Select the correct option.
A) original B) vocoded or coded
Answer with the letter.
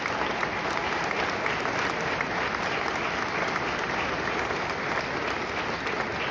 A